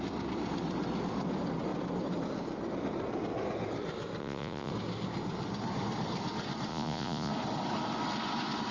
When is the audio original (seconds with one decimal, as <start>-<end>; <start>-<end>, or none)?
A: 0.0-4.2; 4.7-6.7; 7.3-8.7